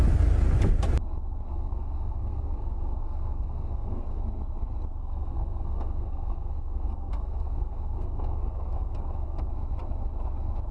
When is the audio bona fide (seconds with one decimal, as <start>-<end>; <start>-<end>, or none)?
0.0-1.5; 4.2-5.0; 9.5-10.7